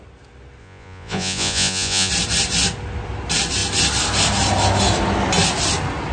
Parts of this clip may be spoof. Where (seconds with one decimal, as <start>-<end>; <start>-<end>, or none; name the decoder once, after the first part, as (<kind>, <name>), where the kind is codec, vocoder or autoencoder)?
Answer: 0.6-2.1 (vocoder, Vocos)